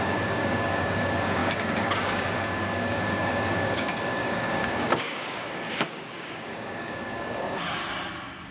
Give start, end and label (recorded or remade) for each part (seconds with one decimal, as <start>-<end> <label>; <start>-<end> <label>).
0.0-7.8 remade; 7.8-8.5 recorded